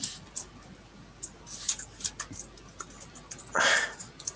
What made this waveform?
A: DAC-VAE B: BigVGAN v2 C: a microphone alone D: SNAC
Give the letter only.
C